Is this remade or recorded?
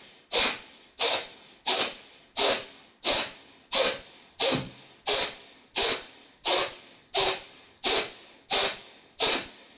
remade